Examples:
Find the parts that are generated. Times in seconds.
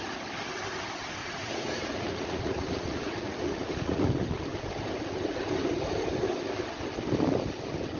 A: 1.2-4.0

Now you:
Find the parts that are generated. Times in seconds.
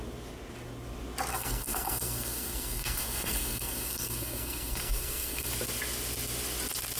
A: 1.3-5.5